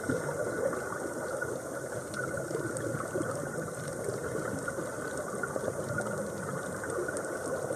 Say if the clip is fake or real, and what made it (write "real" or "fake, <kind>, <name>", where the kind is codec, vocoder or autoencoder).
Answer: real